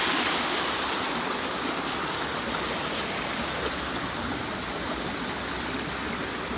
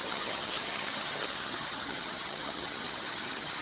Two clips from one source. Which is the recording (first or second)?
first